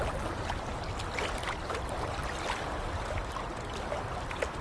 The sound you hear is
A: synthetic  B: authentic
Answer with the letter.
B